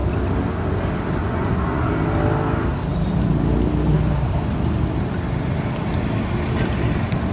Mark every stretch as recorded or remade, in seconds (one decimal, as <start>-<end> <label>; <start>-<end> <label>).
0.0-1.2 recorded; 1.2-1.9 remade; 1.9-7.3 recorded